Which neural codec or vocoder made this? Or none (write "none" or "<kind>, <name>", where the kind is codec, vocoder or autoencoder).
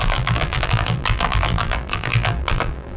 vocoder, BigVGAN v2